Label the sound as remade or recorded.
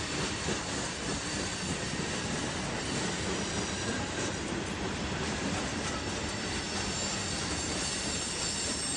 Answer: recorded